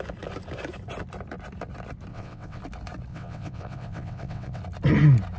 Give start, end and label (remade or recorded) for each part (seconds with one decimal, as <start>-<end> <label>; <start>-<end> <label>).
0.0-2.1 recorded; 2.1-2.6 remade; 2.6-3.1 recorded; 3.1-4.6 remade; 4.6-5.4 recorded